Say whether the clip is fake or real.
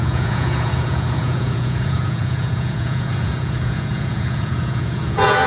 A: fake